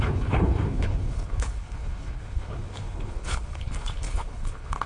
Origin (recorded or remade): remade